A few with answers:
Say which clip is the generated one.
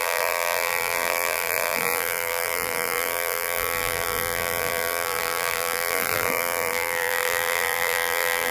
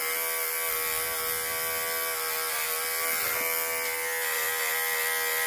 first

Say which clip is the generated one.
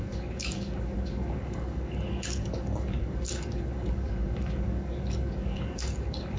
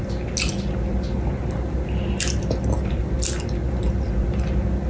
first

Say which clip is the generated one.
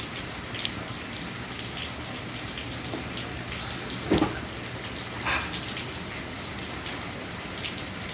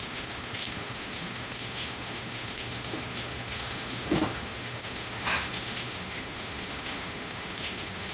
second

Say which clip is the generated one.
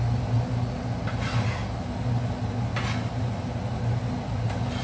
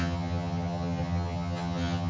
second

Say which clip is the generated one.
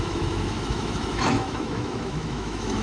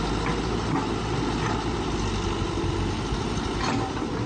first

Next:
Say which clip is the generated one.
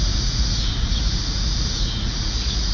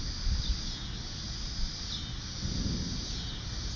first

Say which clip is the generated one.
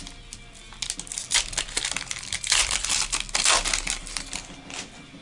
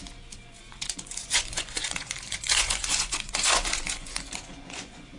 second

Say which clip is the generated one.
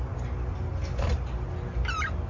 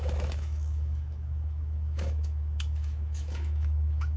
second